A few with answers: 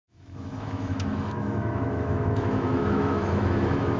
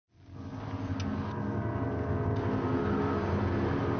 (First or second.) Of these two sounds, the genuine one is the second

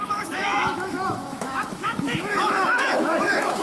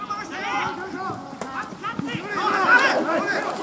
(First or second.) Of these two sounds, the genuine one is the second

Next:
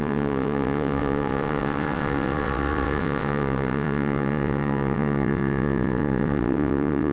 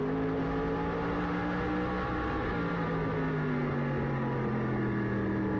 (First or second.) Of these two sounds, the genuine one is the second